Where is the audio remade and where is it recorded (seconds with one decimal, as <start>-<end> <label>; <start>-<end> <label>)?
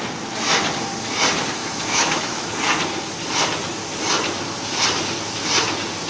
0.0-1.6 recorded; 1.6-2.5 remade; 2.5-6.1 recorded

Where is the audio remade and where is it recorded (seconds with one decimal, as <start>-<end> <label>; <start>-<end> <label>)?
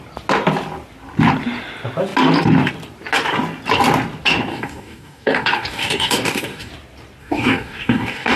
0.0-4.5 recorded; 4.5-6.7 remade; 6.7-7.2 recorded; 7.2-8.4 remade